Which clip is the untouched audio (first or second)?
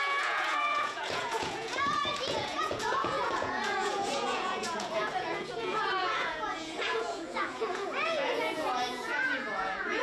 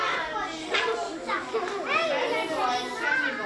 second